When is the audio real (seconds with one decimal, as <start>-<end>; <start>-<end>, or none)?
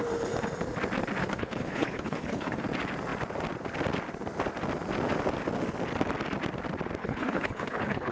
0.0-1.2; 2.6-7.0